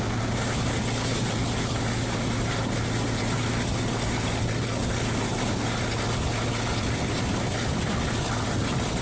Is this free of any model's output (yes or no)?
yes